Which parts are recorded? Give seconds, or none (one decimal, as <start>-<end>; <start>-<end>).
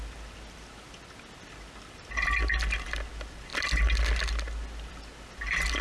0.0-5.8